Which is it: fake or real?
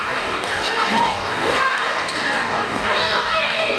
fake